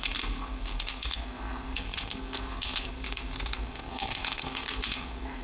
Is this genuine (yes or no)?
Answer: no